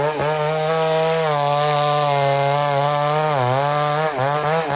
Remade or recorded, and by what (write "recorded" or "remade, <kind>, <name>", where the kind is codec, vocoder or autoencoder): recorded